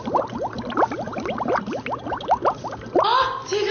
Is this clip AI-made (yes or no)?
no